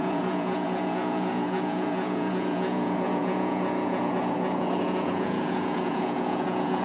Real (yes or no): no